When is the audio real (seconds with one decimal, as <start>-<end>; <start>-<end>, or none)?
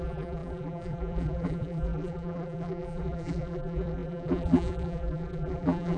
none